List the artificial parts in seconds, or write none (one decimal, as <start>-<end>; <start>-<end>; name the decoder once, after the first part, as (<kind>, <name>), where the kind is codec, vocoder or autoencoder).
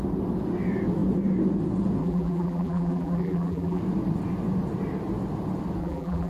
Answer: 2.0-3.8 (vocoder, BigVGAN v2); 5.8-6.3